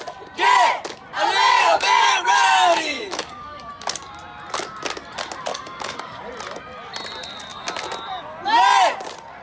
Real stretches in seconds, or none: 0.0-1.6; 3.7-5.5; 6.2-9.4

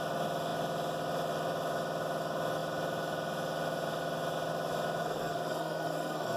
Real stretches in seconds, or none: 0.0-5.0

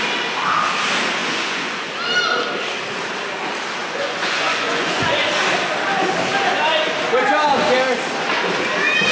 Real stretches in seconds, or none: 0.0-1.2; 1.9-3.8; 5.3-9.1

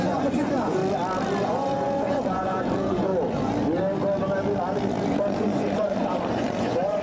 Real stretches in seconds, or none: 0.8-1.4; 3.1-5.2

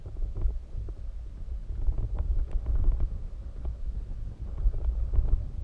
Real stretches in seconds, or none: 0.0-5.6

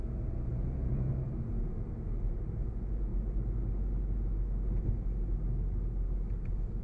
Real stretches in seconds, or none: 0.0-0.5; 1.1-6.8